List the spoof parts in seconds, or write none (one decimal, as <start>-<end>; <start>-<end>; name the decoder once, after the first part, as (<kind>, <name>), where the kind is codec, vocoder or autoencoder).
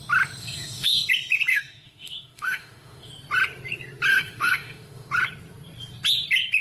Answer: 0.4-1.1 (autoencoder, DAC-VAE); 1.5-3.1; 4.1-5.1